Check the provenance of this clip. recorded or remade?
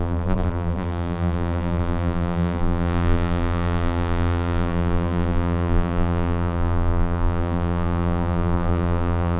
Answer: remade